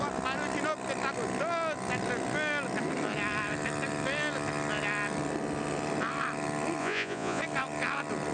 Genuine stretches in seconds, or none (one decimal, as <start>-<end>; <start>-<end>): 0.0-6.8; 7.4-8.3